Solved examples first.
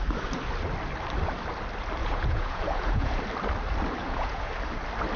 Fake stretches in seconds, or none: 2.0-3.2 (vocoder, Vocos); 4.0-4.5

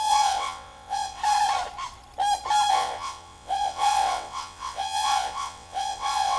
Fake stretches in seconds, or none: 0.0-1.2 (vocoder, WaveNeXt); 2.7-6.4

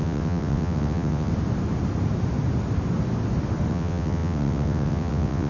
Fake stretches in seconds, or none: 0.0-1.3 (vocoder, WaveNeXt); 3.7-5.5

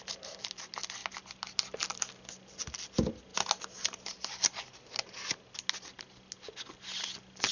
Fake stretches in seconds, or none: none